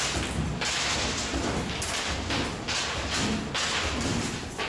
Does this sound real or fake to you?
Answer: real